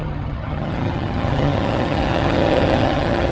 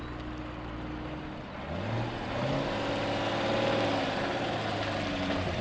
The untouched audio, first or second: second